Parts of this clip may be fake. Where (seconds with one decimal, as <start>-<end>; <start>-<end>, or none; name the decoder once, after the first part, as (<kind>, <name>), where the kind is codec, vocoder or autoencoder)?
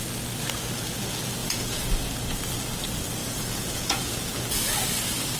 1.4-1.9 (vocoder, Vocos); 3.2-4.4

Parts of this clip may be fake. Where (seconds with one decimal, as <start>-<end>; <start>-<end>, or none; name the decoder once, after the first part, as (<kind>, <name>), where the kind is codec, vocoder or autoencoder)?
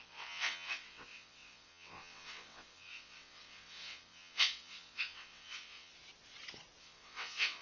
0.0-5.9 (vocoder, WaveNeXt); 6.8-7.6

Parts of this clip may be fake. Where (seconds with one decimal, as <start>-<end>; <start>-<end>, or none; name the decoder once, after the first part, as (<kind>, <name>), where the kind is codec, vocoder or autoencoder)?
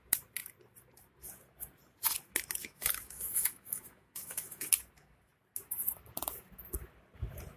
2.6-4.7 (autoencoder, DAC-VAE)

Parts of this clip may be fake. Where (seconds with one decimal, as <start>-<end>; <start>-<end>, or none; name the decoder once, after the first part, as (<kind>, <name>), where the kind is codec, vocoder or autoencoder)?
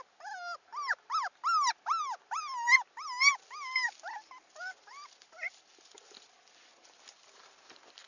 none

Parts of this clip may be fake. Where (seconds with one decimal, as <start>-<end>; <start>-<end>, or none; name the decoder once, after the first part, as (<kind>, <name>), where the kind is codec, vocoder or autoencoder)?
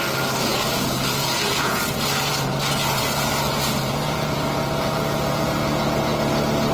0.5-1.8 (vocoder, Vocos); 2.3-6.3